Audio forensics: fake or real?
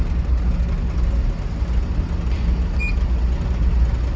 real